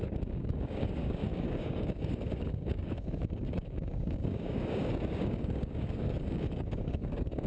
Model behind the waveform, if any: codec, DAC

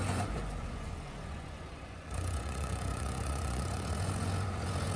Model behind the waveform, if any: vocoder, Vocos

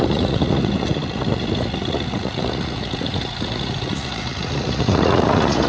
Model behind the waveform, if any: vocoder, Vocos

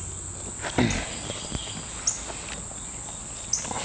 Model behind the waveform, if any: none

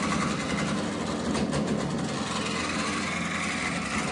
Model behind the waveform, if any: none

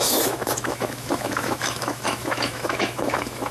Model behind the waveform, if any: autoencoder, DAC-VAE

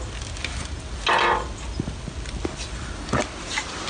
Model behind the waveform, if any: none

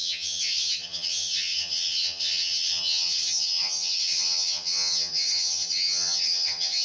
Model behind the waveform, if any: vocoder, HiFi-GAN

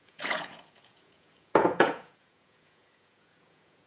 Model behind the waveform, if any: vocoder, Vocos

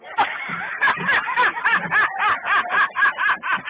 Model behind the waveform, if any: vocoder, BigVGAN v2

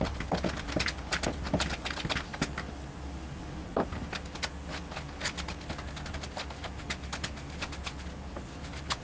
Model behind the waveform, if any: none